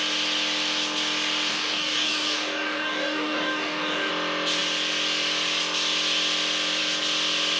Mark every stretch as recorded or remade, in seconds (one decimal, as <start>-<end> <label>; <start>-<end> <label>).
0.0-1.5 recorded; 1.5-4.1 remade; 4.1-7.6 recorded